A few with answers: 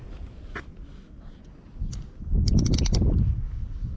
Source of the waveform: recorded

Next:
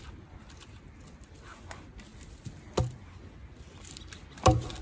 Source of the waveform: recorded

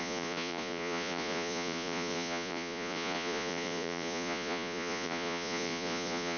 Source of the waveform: remade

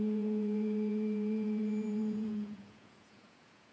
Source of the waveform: remade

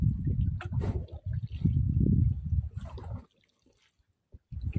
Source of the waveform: recorded